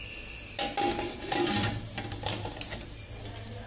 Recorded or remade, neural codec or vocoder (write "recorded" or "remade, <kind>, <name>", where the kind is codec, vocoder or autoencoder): recorded